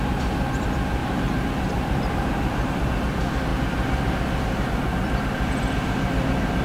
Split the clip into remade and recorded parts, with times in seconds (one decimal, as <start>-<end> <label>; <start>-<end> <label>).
0.0-1.0 recorded; 1.0-2.7 remade; 2.7-6.6 recorded